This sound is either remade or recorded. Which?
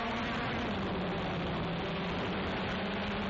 recorded